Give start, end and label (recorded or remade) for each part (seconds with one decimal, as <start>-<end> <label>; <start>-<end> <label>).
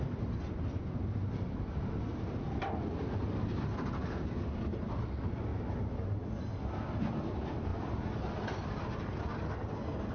0.0-10.1 recorded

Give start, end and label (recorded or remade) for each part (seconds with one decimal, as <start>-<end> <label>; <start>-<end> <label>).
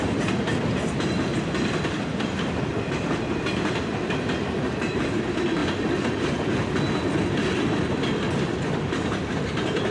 0.0-5.6 remade; 5.6-7.3 recorded; 7.3-9.9 remade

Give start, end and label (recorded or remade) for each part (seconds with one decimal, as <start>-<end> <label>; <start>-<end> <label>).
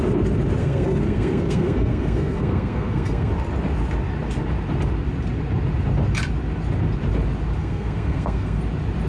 0.0-0.6 recorded; 0.6-3.3 remade; 3.3-7.6 recorded; 7.6-8.6 remade; 8.6-9.1 recorded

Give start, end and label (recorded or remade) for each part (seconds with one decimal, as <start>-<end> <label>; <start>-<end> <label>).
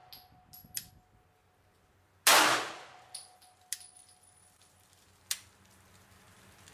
0.0-6.7 recorded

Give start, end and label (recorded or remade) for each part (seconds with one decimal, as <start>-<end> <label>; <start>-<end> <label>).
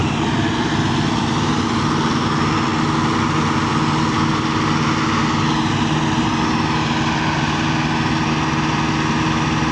0.0-9.7 recorded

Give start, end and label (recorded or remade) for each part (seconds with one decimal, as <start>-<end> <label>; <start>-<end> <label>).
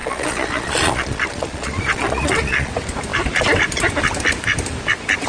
0.0-2.7 remade; 2.7-5.3 recorded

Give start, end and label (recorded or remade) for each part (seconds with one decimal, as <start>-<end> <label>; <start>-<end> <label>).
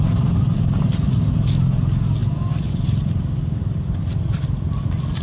0.0-5.2 recorded